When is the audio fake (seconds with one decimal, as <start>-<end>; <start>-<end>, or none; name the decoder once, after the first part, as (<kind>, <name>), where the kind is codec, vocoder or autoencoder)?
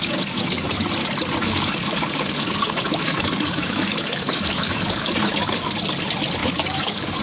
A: 0.0-0.7 (codec, DAC); 1.4-5.7; 6.4-7.2